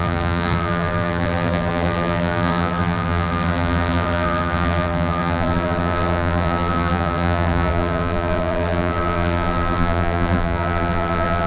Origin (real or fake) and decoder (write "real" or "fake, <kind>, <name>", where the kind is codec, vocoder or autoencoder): fake, vocoder, BigVGAN v2